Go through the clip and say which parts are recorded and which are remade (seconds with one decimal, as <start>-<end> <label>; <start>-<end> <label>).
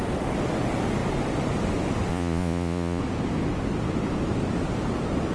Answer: 0.0-2.1 recorded; 2.1-3.0 remade; 3.0-5.3 recorded